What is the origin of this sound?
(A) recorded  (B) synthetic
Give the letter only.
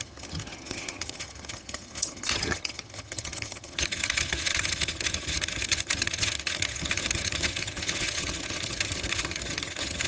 B